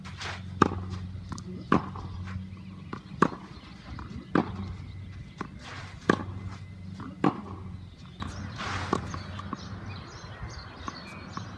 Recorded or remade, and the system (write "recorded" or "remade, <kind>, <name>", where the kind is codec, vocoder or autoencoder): recorded